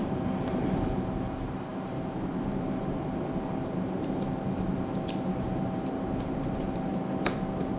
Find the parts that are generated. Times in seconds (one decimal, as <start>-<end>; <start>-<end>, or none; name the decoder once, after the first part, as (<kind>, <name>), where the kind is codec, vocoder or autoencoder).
0.0-6.9 (vocoder, BigVGAN v2)